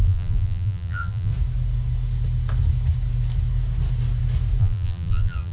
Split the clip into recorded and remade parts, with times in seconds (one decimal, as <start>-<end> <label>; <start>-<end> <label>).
0.0-1.3 remade; 1.3-4.6 recorded; 4.6-5.5 remade